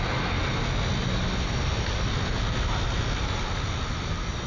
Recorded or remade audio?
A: recorded